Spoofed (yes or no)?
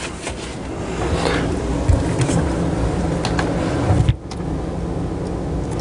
no